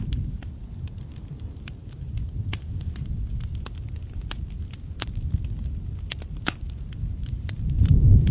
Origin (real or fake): fake